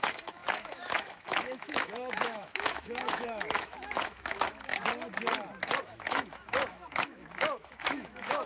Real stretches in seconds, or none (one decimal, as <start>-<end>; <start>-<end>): 4.7-5.8